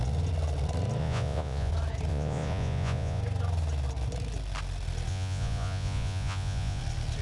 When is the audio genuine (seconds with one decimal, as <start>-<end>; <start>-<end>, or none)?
0.0-1.0; 1.7-2.1; 3.2-5.1; 6.8-7.2